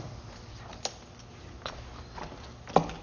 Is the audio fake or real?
real